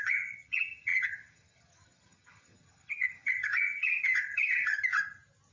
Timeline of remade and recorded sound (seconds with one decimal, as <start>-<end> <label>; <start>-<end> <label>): 0.0-4.8 remade; 4.8-5.5 recorded